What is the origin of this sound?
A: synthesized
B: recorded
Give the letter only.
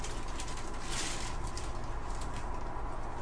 B